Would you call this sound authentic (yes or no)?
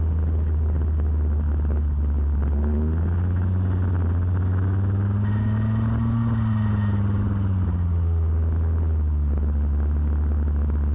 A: yes